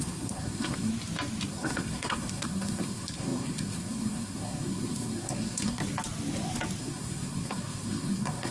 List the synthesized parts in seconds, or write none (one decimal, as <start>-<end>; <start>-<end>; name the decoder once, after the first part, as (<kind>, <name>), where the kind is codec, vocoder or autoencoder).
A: 0.0-0.9 (codec, SNAC); 1.5-5.8; 6.8-8.5